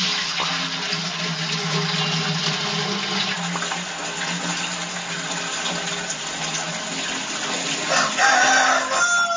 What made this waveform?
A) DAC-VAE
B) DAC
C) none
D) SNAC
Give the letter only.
C